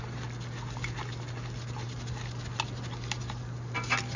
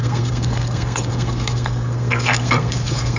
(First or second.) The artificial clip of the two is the second